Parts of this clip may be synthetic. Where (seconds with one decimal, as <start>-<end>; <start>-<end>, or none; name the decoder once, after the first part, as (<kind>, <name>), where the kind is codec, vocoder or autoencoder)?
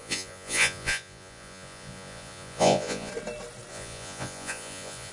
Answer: 0.0-3.1 (vocoder, Vocos); 3.7-5.1